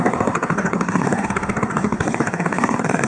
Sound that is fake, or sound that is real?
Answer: fake